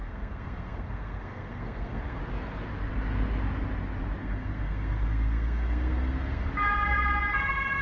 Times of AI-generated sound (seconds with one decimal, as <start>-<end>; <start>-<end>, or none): 0.0-2.2; 4.2-6.5